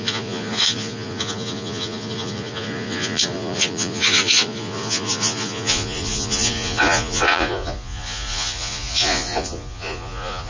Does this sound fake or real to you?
fake